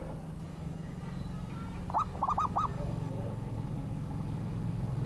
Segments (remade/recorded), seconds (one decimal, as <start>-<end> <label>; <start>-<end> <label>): 0.0-0.5 recorded; 0.5-1.0 remade; 1.0-2.7 recorded; 2.7-5.1 remade